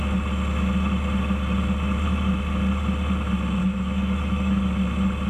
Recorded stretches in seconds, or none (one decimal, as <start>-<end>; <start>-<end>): 0.0-3.6; 4.6-5.3